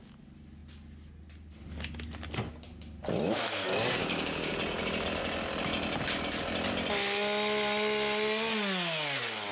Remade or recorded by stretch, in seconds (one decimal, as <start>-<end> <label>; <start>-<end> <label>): 0.0-4.0 recorded; 4.0-4.5 remade; 4.5-9.5 recorded